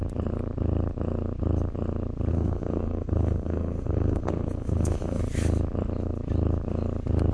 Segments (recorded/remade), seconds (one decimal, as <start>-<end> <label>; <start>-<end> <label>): 0.0-2.3 recorded; 2.3-5.2 remade; 5.2-7.3 recorded